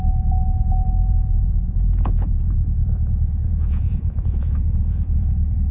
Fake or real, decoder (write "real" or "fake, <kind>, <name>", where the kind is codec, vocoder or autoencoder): fake, vocoder, Vocos